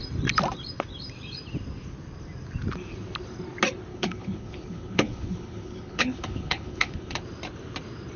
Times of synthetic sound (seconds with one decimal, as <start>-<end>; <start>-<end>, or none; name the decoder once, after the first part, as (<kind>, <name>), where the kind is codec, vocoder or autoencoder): 3.9-7.2 (codec, HILCodec)